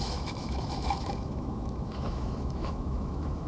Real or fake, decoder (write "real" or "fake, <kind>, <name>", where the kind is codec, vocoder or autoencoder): fake, autoencoder, DAC-VAE